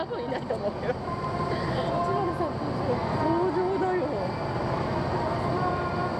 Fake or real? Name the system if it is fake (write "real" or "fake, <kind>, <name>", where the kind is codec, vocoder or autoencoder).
real